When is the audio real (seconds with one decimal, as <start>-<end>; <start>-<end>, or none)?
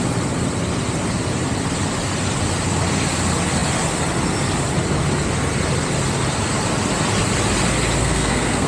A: 0.0-8.0